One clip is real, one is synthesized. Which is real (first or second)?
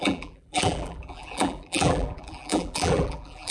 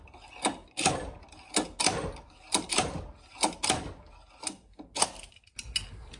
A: second